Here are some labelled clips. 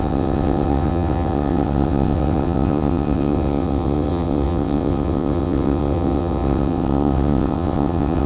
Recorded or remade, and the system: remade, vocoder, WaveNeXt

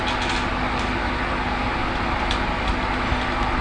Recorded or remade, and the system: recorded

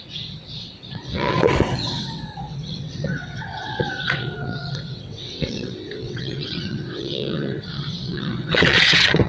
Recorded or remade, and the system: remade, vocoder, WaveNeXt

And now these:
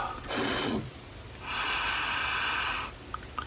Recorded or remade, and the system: recorded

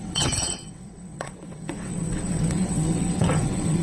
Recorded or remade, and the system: remade, vocoder, WaveNeXt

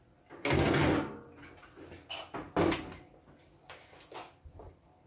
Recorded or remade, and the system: recorded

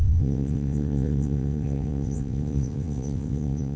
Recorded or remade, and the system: remade, vocoder, WaveNeXt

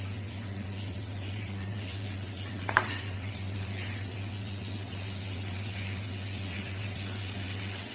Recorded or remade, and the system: remade, vocoder, WaveNeXt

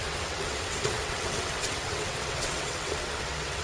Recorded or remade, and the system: remade, vocoder, WaveNeXt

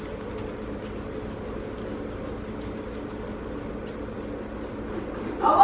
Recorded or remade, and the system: recorded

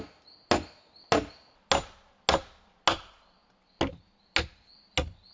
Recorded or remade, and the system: recorded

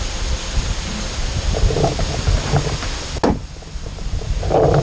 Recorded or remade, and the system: recorded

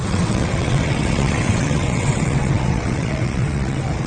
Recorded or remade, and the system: remade, vocoder, WaveNeXt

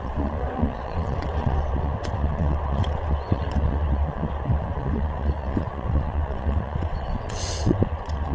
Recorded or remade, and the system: remade, vocoder, WaveNeXt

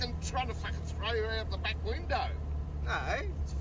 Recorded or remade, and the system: recorded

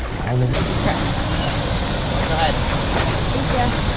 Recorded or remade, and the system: recorded